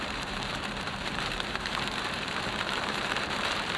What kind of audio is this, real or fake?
fake